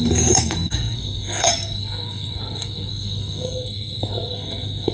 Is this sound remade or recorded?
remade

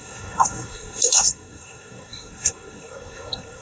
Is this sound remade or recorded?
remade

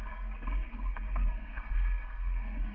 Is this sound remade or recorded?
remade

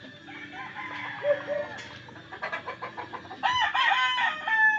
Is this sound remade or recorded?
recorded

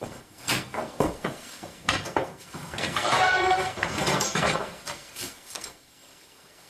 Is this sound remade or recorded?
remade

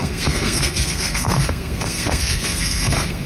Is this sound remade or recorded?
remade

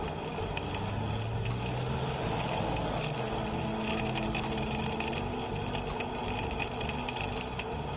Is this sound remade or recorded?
recorded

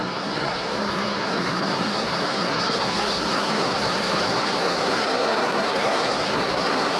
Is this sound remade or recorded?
remade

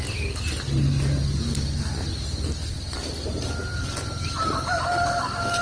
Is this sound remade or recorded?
recorded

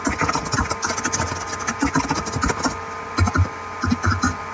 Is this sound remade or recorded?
recorded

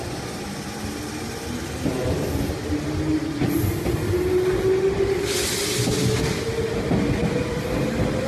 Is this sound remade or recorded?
recorded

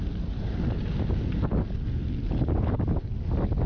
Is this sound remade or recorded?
recorded